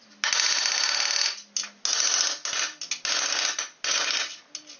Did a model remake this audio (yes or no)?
no